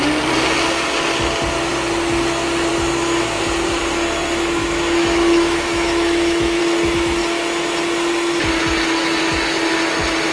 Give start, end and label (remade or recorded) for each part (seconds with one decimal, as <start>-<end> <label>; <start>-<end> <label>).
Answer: 0.0-4.6 recorded; 4.6-6.6 remade; 6.6-10.3 recorded